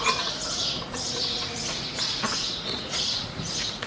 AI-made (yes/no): yes